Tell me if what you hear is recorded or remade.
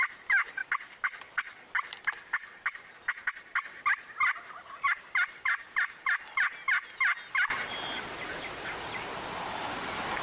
recorded